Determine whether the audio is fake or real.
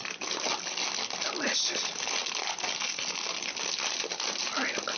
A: real